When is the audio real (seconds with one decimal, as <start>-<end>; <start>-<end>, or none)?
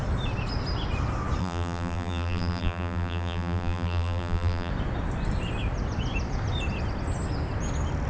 0.0-1.4; 4.7-8.1